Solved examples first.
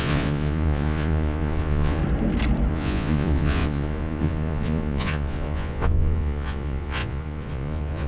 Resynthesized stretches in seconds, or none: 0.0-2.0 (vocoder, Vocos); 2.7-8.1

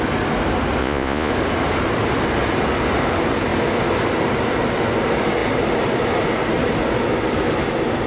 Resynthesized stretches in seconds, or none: 0.8-1.3 (vocoder, Vocos)